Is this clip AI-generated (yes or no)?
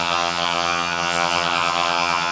yes